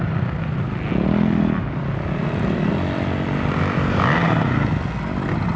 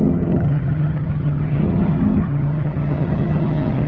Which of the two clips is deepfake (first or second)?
second